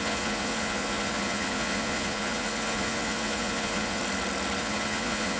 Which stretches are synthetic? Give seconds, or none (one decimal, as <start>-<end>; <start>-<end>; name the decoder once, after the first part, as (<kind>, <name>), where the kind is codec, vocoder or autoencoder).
0.0-4.0 (vocoder, Vocos); 4.6-5.4